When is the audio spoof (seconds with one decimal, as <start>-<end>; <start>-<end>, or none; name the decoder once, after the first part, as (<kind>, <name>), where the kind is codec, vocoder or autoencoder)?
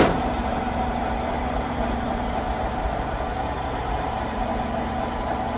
0.0-4.5 (vocoder, BigVGAN v2); 5.0-5.6